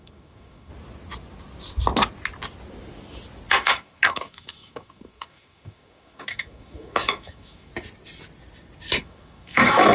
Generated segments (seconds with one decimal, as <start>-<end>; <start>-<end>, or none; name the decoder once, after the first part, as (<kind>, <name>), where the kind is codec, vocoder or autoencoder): 0.0-0.7 (autoencoder, DAC-VAE); 3.5-7.7; 9.0-9.9